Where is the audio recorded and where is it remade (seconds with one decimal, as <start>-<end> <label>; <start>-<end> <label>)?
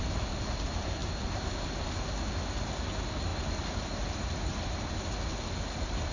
0.0-6.1 recorded